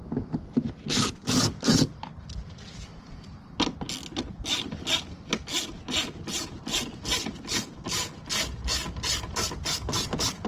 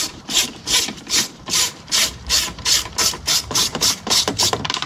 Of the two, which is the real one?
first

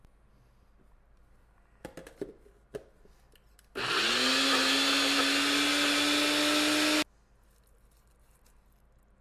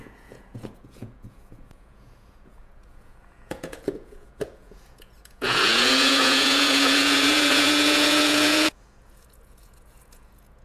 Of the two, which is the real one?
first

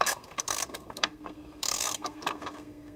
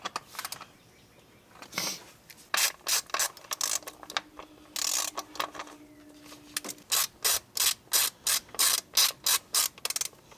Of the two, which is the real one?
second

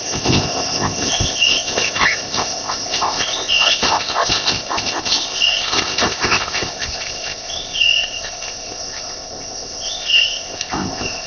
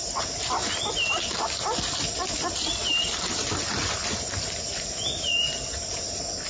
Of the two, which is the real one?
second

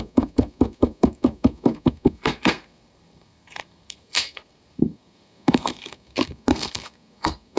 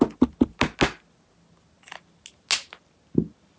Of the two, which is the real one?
second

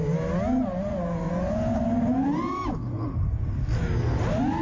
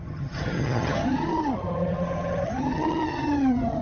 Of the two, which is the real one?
first